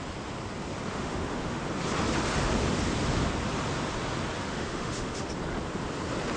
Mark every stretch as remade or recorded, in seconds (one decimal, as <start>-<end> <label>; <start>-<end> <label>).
0.0-0.9 recorded; 0.9-1.6 remade; 1.6-4.5 recorded; 4.5-5.3 remade; 5.3-6.4 recorded